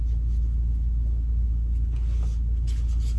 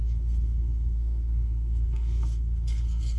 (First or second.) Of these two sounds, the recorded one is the first